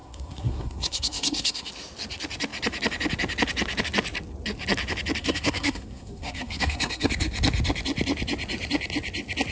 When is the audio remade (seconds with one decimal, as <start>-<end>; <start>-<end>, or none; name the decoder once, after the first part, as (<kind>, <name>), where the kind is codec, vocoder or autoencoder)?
0.0-1.7 (codec, SNAC); 5.2-7.1